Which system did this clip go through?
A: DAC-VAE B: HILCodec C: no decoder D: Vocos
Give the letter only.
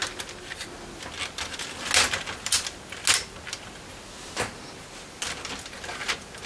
C